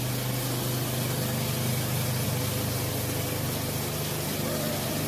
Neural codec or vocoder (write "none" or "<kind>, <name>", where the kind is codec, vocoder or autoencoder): none